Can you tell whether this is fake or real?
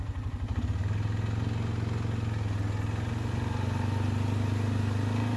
real